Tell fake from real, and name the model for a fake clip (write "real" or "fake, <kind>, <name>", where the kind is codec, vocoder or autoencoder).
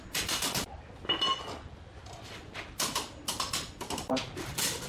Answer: real